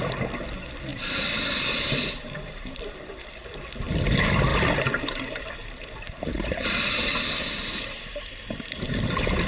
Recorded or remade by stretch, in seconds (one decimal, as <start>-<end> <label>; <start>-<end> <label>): 0.0-0.9 recorded; 0.9-2.8 remade; 2.8-4.5 recorded; 4.5-8.2 remade; 8.2-9.5 recorded